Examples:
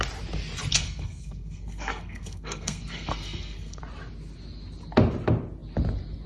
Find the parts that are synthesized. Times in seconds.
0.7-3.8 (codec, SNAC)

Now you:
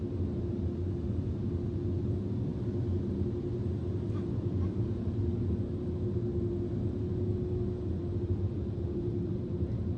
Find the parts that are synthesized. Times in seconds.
none